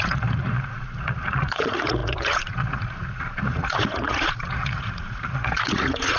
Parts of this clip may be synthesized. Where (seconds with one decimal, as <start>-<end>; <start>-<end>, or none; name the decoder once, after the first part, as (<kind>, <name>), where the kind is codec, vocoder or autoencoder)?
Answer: 0.0-6.2 (vocoder, Vocos)